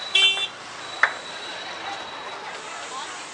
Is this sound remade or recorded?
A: recorded